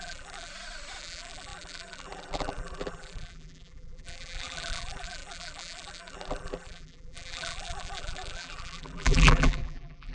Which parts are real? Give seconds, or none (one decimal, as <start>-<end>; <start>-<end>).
0.5-1.0